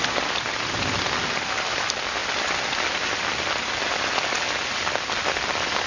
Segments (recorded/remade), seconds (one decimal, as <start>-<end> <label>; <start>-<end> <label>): 0.0-5.9 recorded